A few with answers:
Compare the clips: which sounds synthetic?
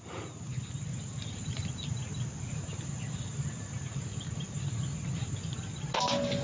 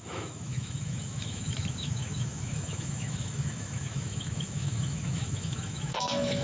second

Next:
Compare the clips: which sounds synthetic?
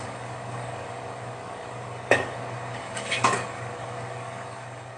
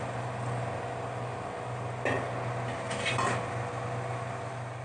first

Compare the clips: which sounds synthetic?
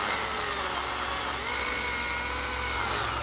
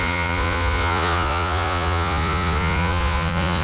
second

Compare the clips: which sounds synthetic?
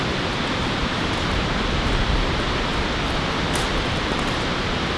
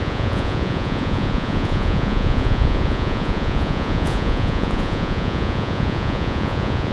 second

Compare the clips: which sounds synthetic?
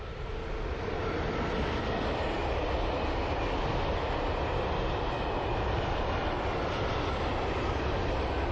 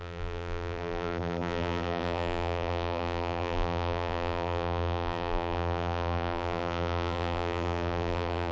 second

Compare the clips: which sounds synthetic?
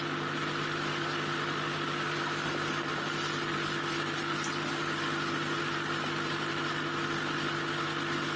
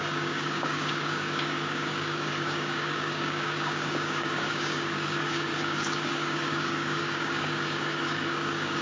second